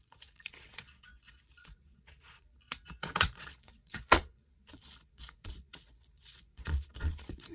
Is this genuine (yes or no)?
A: no